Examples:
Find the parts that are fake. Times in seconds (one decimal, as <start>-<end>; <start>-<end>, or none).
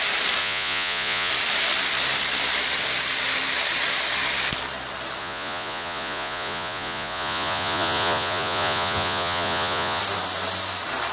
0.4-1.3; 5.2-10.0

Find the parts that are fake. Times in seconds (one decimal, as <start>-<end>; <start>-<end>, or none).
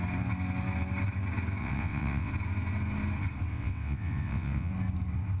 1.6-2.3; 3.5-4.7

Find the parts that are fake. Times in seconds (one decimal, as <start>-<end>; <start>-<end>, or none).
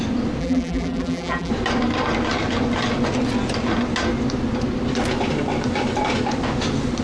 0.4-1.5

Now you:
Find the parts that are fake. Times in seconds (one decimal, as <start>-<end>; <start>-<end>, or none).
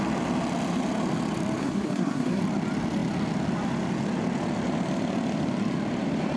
1.6-2.4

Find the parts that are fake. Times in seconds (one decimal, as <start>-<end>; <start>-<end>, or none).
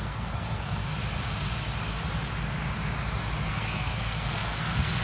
0.0-0.9; 3.5-5.0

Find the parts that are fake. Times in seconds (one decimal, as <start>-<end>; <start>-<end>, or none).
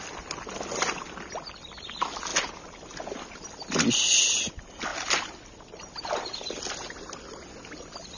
none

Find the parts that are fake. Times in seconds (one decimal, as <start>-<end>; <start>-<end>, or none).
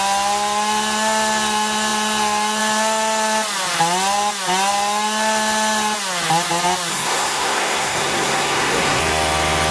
6.9-9.0